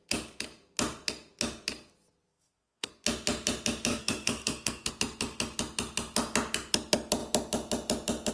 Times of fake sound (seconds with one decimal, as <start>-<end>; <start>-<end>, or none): 2.3-2.9; 3.9-4.9